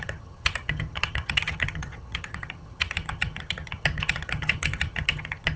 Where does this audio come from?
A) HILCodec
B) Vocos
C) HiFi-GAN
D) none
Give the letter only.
C